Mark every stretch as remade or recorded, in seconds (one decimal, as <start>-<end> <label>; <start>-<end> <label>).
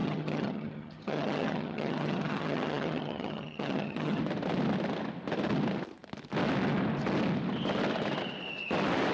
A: 0.0-4.2 remade; 4.2-9.1 recorded